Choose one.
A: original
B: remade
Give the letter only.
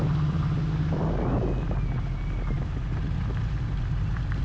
A